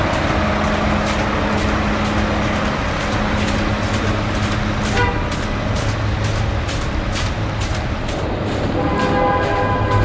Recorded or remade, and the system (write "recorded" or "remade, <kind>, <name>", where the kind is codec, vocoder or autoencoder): recorded